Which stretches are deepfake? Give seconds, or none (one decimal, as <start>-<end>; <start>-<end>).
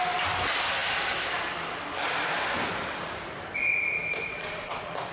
3.7-4.4